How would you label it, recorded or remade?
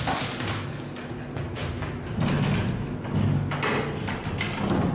recorded